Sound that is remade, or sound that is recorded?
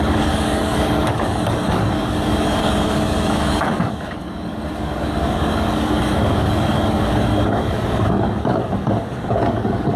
remade